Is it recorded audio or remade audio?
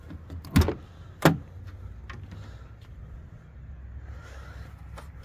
recorded